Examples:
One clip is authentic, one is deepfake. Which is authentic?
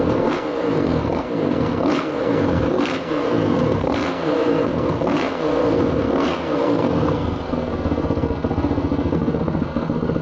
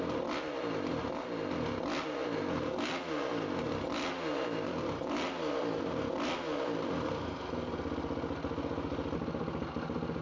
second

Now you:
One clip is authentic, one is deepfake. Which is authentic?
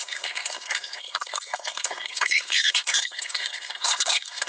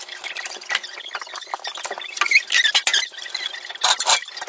second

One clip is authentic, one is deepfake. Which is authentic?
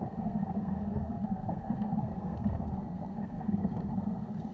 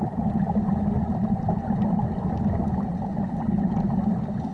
second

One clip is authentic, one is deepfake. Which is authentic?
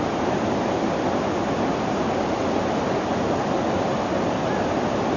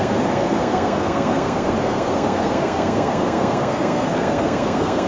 first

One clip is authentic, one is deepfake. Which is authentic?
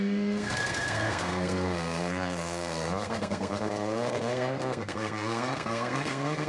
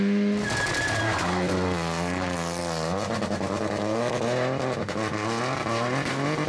second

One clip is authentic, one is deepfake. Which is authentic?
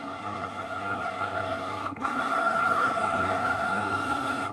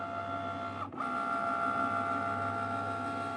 second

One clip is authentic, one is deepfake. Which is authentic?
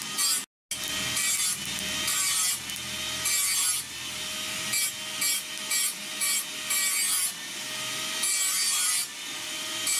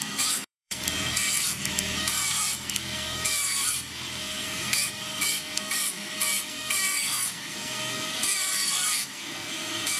first